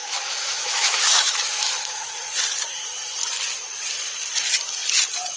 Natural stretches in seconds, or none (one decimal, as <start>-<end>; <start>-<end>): 2.1-5.4